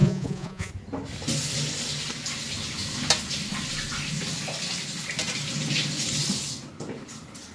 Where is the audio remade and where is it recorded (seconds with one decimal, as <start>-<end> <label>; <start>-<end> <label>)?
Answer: 0.0-0.7 remade; 0.7-7.5 recorded